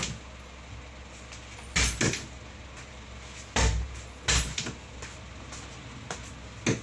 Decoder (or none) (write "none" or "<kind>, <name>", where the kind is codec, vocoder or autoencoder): none